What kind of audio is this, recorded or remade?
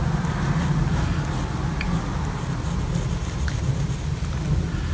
recorded